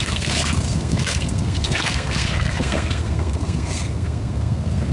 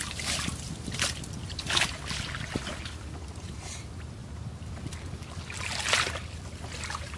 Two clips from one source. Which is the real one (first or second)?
second